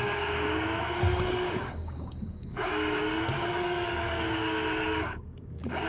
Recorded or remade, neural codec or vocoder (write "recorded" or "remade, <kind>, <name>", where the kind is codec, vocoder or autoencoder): remade, codec, DAC